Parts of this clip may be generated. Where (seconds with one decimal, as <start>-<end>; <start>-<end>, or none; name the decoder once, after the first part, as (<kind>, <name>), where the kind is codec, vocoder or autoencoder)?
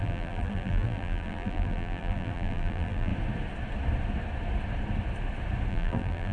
0.0-3.1 (vocoder, BigVGAN v2); 5.7-6.3